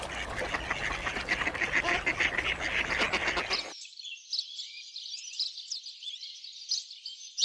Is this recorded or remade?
recorded